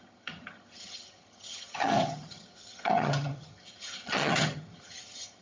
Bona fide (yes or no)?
no